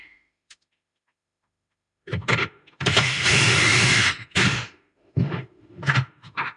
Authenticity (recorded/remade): remade